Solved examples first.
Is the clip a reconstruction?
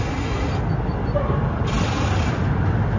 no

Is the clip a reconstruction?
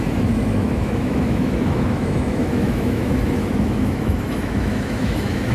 yes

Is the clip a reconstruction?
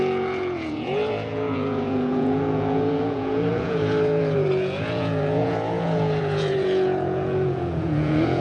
yes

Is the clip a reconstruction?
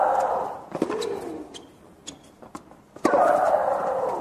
no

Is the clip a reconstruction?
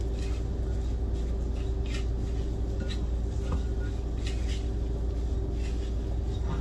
no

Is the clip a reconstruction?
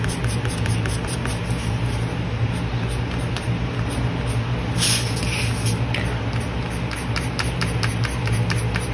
no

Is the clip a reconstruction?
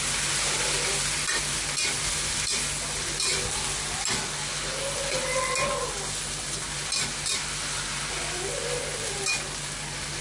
no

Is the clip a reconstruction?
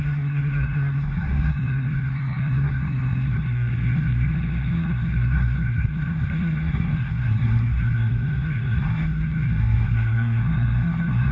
yes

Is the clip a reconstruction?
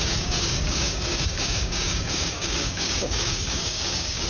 yes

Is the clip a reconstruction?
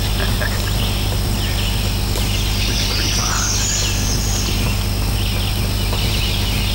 no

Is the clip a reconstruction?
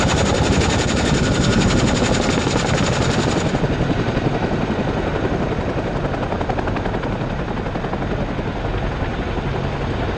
no